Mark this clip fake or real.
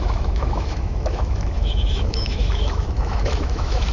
fake